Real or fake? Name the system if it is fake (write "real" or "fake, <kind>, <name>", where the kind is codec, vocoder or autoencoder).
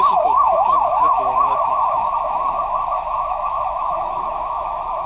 fake, autoencoder, DAC-VAE